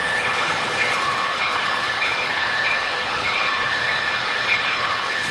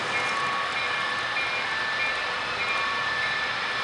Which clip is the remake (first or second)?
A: first